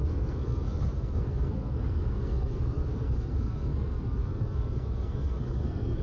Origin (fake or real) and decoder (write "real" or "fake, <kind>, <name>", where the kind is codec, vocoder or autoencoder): fake, codec, SNAC